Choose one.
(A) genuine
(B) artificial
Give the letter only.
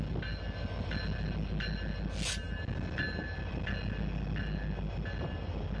A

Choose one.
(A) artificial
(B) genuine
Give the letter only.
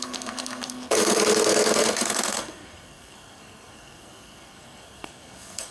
A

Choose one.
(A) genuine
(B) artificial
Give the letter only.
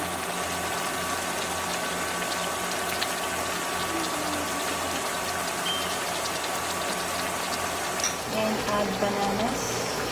A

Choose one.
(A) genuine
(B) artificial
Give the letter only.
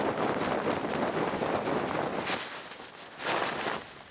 A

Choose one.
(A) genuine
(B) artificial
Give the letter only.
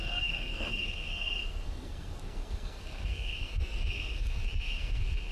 B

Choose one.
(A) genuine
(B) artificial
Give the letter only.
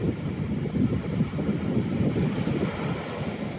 A